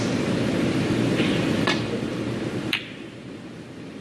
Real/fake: fake